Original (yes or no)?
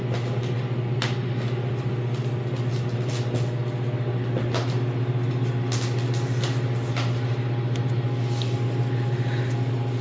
yes